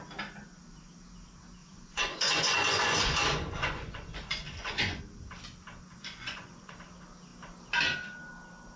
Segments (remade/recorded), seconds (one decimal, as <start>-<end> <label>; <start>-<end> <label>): 0.0-1.6 recorded; 1.6-5.0 remade; 5.0-6.0 recorded; 6.0-6.7 remade; 6.7-8.8 recorded